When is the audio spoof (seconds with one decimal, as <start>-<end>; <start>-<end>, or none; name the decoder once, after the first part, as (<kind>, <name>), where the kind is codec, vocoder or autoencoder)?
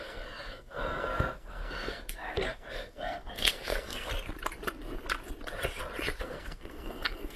0.0-4.1 (codec, SNAC); 6.2-7.4